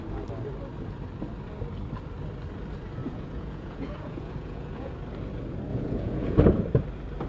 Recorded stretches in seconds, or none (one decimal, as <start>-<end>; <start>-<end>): 0.0-3.0; 4.9-5.7; 6.4-7.3